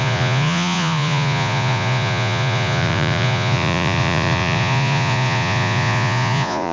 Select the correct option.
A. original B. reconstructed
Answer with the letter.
B